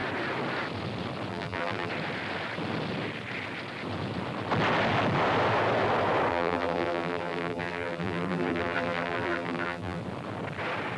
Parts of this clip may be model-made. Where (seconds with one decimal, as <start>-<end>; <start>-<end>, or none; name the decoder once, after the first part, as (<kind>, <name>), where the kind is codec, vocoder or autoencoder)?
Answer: 1.3-1.9 (vocoder, BigVGAN v2); 6.3-10.0